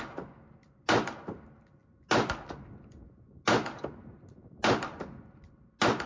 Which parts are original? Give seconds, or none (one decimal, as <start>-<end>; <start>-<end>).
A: 0.0-6.1